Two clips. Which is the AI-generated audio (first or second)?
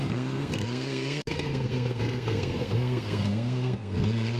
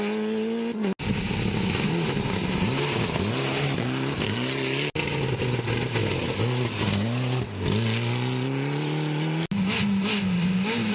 first